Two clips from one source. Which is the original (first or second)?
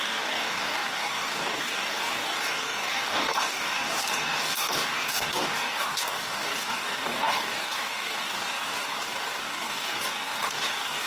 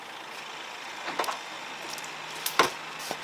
second